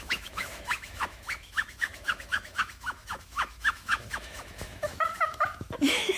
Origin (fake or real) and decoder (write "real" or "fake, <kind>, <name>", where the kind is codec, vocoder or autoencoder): fake, autoencoder, DAC-VAE